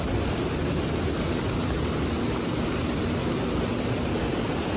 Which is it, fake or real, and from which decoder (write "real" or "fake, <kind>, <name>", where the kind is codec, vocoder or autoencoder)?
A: real